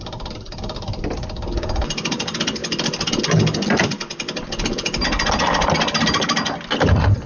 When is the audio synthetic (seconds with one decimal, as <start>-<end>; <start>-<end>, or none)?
none